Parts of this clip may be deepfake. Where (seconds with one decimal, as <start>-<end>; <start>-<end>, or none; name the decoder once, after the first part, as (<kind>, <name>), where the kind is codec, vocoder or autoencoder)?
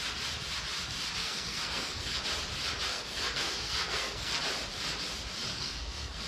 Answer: 1.2-2.2 (codec, SNAC); 2.9-4.4; 5.5-6.3